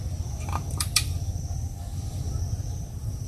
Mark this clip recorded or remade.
remade